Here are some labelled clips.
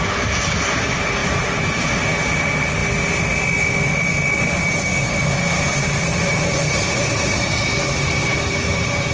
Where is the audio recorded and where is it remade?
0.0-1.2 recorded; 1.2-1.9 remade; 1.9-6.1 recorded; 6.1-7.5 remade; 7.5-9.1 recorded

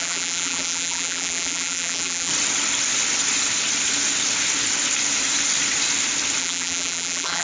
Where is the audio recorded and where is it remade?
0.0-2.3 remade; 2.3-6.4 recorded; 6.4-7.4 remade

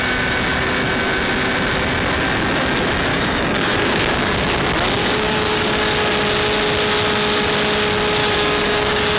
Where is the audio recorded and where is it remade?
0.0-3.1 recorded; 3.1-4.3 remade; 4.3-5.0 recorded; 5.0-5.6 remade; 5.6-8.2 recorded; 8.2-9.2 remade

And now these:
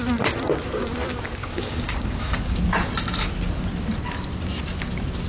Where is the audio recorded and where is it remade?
0.0-1.4 recorded; 1.4-2.4 remade; 2.4-5.3 recorded